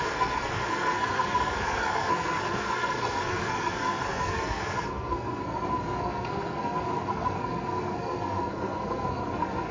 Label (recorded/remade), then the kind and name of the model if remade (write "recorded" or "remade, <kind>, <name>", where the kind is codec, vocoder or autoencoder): remade, codec, SNAC